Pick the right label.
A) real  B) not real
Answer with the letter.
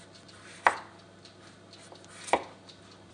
A